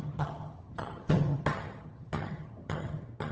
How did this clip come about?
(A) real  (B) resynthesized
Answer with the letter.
B